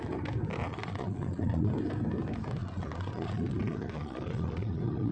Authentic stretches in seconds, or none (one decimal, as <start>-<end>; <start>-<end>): 0.0-0.6; 1.7-2.6